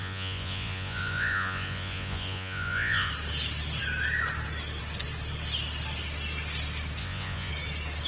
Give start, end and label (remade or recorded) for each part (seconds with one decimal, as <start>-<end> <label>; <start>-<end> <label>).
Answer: 0.0-3.1 remade; 3.1-7.0 recorded; 7.0-7.5 remade; 7.5-8.1 recorded